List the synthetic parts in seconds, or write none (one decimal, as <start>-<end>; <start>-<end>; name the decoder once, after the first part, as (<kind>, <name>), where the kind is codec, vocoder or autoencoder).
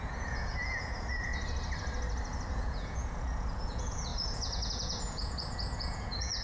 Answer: 0.0-1.3 (vocoder, Vocos); 2.5-6.4